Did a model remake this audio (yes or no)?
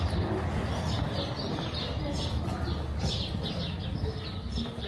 no